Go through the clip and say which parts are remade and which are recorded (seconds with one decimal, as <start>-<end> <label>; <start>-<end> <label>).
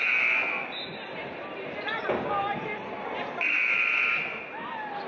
0.0-5.1 recorded